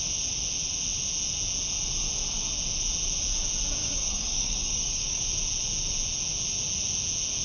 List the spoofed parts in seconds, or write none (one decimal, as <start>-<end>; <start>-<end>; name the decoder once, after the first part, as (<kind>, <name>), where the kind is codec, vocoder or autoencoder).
3.8-5.2 (codec, DAC)